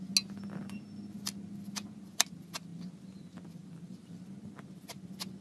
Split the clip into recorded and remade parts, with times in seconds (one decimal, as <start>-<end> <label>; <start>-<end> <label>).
0.0-5.4 recorded

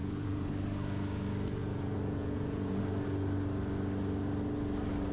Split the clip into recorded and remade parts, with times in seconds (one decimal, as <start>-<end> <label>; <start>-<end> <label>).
0.0-0.5 remade; 0.5-1.6 recorded; 1.6-2.8 remade; 2.8-5.1 recorded

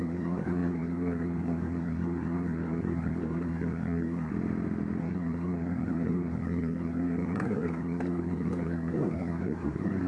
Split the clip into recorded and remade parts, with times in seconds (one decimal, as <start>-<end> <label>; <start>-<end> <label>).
0.0-4.3 remade; 4.3-5.0 recorded; 5.0-10.1 remade

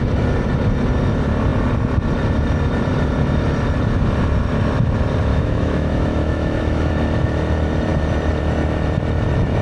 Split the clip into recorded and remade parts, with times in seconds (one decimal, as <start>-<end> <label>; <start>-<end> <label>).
0.0-5.3 recorded; 5.3-6.9 remade; 6.9-9.6 recorded

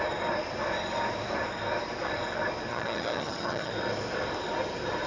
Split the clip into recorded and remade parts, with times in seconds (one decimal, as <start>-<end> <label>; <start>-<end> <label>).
0.0-2.7 recorded; 2.7-3.7 remade; 3.7-5.1 recorded

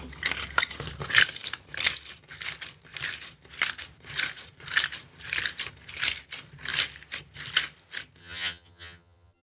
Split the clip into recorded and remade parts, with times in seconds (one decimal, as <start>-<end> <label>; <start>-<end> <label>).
0.0-8.2 recorded; 8.2-9.4 remade

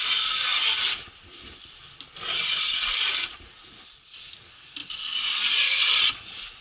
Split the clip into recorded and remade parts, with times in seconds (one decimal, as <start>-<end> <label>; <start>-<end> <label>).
0.0-0.5 recorded; 0.5-3.2 remade; 3.2-4.8 recorded; 4.8-6.1 remade; 6.1-6.6 recorded